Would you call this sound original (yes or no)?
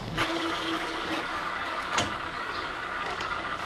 no